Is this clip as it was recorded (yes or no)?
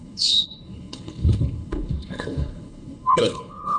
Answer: no